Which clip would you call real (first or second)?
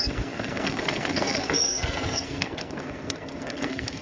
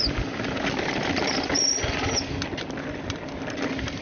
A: second